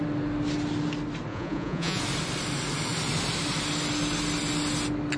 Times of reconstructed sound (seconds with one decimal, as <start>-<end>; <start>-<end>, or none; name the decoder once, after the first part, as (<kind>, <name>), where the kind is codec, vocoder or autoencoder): 1.3-2.0 (vocoder, Vocos)